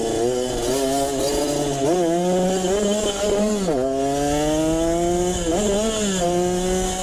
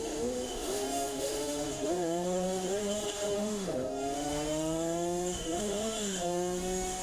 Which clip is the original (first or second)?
first